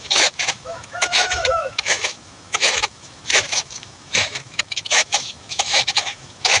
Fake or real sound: fake